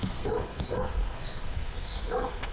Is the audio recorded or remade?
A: remade